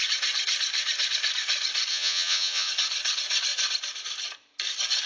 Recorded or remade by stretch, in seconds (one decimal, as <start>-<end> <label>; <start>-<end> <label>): 0.0-1.9 recorded; 1.9-2.7 remade; 2.7-5.1 recorded